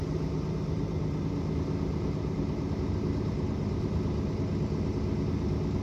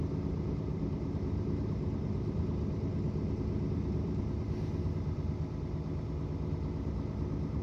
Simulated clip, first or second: second